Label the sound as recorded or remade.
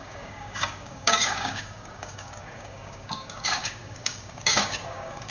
remade